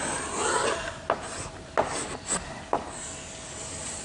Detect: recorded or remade recorded